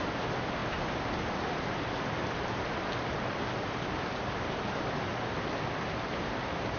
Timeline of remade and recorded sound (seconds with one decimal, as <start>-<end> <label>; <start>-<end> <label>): 0.0-6.8 recorded